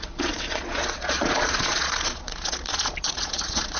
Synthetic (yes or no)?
yes